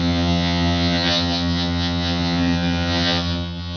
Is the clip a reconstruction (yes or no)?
yes